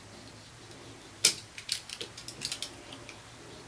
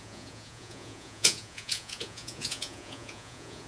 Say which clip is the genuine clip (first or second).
first